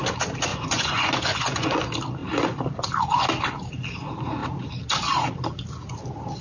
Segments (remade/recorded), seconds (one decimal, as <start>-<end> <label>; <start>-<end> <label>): 0.0-0.5 recorded; 0.5-1.8 remade; 1.8-6.4 recorded